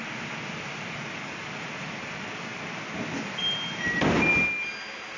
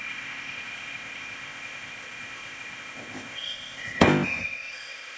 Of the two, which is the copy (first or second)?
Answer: second